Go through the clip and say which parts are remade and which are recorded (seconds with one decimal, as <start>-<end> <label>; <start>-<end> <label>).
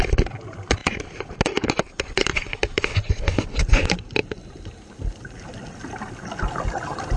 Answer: 0.0-7.2 recorded